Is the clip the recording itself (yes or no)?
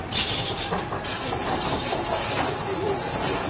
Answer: yes